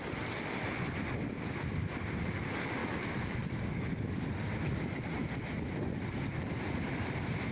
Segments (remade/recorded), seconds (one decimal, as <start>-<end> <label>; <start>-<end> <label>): 0.0-2.8 recorded; 2.8-3.9 remade; 3.9-7.5 recorded